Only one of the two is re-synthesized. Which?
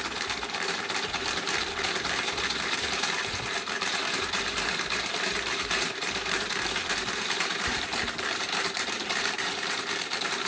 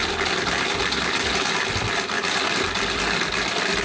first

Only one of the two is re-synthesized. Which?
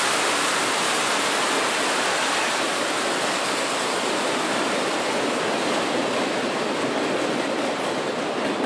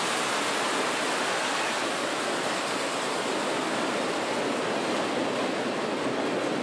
first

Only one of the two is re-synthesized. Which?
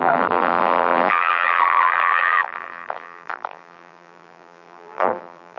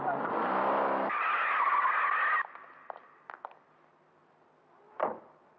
first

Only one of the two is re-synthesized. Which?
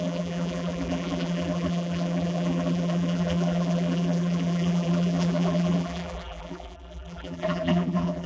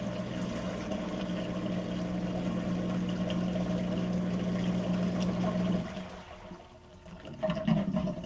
first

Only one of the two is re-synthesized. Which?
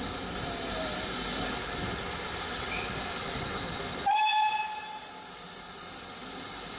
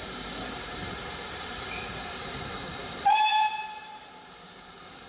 second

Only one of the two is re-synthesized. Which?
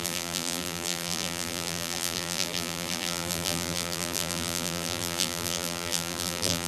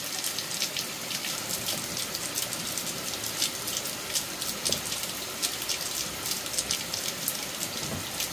first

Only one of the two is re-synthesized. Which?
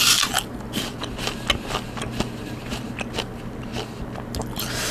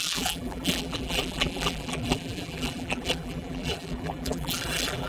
second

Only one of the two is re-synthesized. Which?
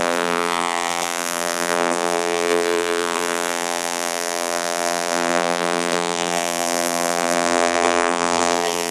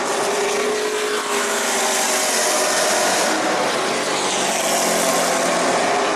first